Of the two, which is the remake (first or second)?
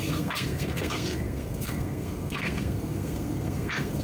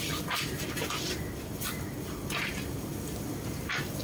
first